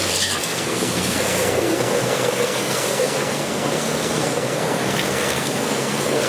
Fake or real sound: fake